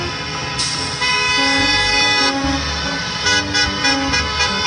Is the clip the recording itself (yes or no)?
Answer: yes